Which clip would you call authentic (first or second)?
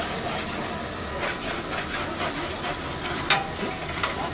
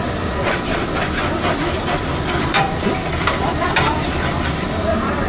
first